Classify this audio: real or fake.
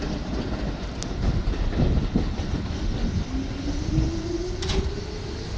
real